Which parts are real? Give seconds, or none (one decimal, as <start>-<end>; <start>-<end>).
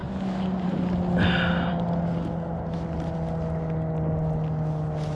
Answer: 0.0-5.2